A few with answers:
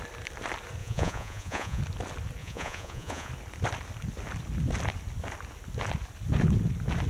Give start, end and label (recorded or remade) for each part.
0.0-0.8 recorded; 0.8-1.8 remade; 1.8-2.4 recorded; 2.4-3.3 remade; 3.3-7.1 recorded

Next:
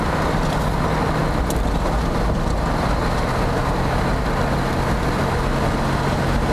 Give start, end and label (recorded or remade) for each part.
0.0-6.5 recorded

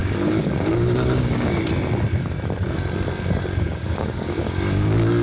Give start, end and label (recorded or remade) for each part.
0.0-1.6 remade; 1.6-3.6 recorded; 3.6-5.2 remade

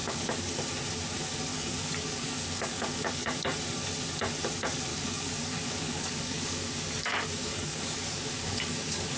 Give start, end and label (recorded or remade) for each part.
0.0-0.5 remade; 0.5-1.5 recorded; 1.5-3.4 remade; 3.4-4.9 recorded; 4.9-9.2 remade

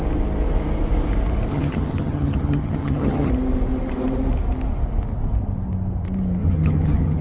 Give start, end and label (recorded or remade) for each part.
0.0-1.5 recorded; 1.5-3.3 remade; 3.3-6.4 recorded; 6.4-7.2 remade

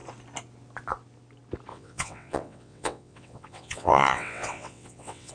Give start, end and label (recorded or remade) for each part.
0.0-1.7 recorded; 1.7-5.3 remade

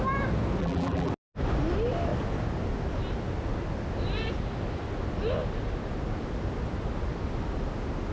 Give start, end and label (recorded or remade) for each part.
0.0-0.6 recorded; 0.6-1.1 remade; 1.1-8.1 recorded

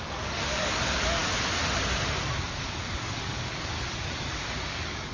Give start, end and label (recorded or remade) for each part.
0.0-1.2 remade; 1.2-2.5 recorded; 2.5-5.1 remade